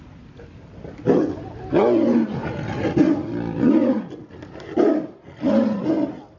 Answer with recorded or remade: recorded